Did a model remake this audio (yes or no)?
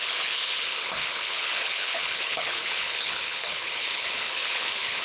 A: yes